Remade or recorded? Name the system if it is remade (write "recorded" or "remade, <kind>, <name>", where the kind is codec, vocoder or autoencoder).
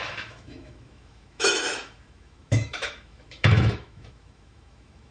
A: remade, autoencoder, DAC-VAE